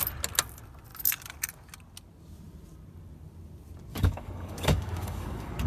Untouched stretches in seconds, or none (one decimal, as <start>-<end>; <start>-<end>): 0.0-3.9